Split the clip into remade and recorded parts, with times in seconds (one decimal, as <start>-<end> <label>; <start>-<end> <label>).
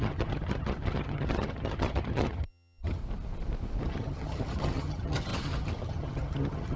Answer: 0.0-3.0 remade; 3.0-3.8 recorded; 3.8-6.8 remade